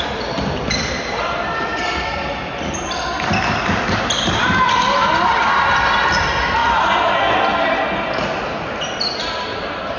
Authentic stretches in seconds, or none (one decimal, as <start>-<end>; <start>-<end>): 0.0-10.0